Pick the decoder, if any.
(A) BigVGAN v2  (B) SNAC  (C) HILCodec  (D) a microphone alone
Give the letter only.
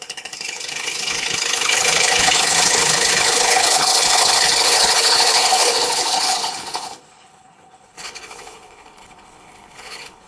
C